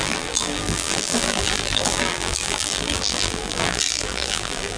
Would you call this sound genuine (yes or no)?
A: no